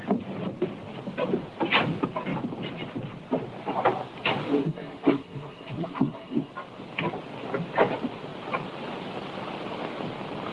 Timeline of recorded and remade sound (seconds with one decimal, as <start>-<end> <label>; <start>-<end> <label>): 0.0-4.6 recorded; 4.6-6.5 remade; 6.5-10.5 recorded